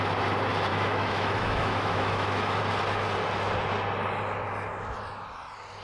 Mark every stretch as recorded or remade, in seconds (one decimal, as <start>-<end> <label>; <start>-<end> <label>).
0.0-0.7 recorded; 0.7-2.6 remade; 2.6-5.8 recorded

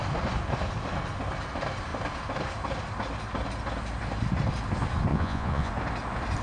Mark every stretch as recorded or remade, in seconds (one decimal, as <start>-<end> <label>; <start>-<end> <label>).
0.0-5.1 recorded; 5.1-5.7 remade; 5.7-6.4 recorded